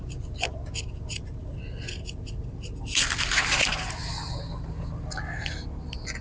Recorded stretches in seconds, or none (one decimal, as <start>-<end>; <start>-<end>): 0.0-6.2